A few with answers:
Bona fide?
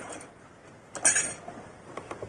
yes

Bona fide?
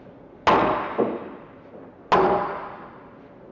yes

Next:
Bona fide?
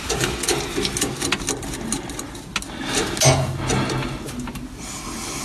yes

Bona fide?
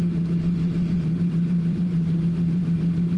no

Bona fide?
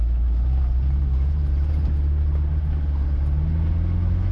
yes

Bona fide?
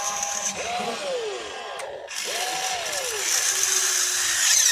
yes